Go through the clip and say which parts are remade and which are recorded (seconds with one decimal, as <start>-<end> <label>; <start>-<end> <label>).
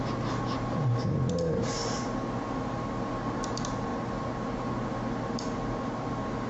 0.0-6.5 recorded